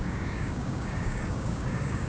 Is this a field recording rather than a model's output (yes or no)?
no